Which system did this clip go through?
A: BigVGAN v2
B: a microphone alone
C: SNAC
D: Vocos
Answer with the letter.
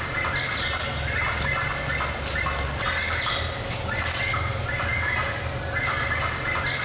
B